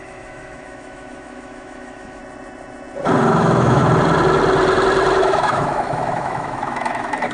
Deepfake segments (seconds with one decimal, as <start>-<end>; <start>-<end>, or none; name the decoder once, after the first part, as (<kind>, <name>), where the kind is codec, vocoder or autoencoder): 0.0-2.2 (autoencoder, DAC-VAE); 3.3-3.8; 5.2-7.3